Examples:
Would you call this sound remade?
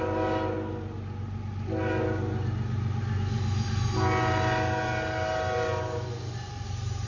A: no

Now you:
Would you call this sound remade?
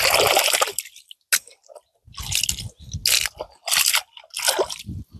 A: no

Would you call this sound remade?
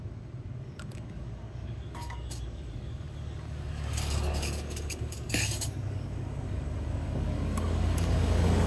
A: yes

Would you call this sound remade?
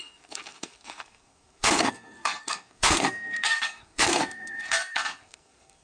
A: yes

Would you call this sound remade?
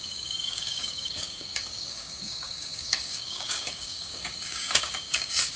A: yes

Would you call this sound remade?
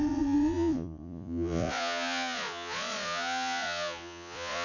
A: yes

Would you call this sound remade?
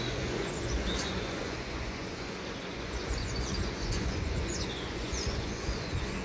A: yes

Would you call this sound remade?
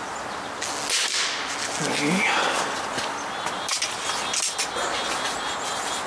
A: no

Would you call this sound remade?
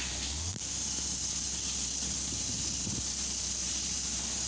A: no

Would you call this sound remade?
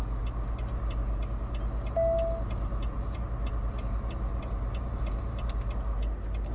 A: no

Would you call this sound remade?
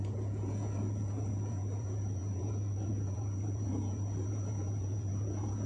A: yes